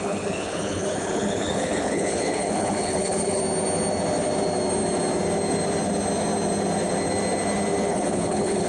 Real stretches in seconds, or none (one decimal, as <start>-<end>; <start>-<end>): 3.4-7.9